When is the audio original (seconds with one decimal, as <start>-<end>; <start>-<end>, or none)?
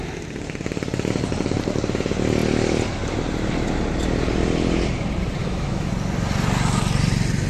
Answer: 0.0-5.4; 5.9-7.5